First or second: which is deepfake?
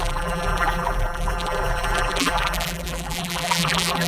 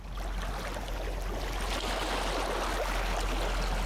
first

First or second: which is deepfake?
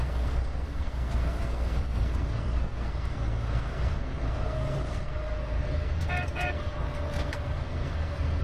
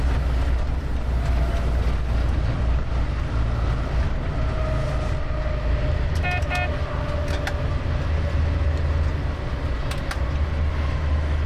first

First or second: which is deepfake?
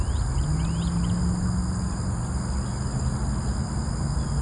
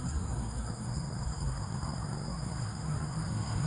second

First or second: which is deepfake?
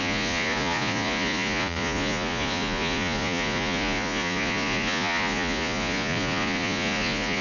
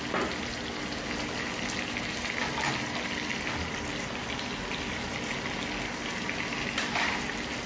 first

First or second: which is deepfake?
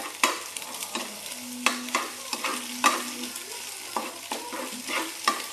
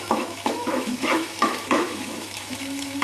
second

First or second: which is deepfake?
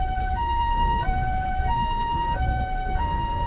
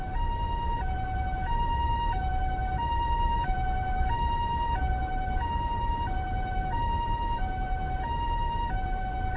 first